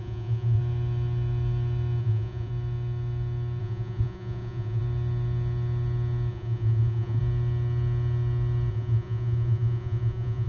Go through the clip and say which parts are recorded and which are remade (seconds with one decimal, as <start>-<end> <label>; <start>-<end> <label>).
0.0-0.6 remade; 0.6-2.0 recorded; 2.0-2.5 remade; 2.5-3.6 recorded; 3.6-4.8 remade; 4.8-6.3 recorded; 6.3-7.2 remade; 7.2-8.7 recorded; 8.7-10.5 remade

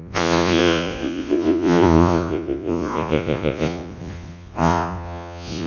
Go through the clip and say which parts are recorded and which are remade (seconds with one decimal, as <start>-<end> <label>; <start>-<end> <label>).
0.0-5.7 remade

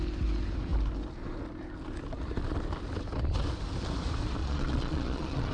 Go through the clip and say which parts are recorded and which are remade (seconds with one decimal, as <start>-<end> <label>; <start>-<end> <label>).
0.0-4.4 recorded; 4.4-5.5 remade

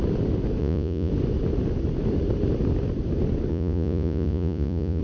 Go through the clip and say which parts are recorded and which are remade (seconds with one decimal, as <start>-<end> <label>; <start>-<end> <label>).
0.0-0.6 recorded; 0.6-1.1 remade; 1.1-3.5 recorded; 3.5-5.0 remade

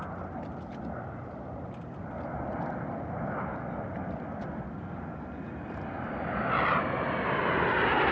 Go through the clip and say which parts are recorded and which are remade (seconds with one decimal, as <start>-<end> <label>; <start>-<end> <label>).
0.0-8.1 recorded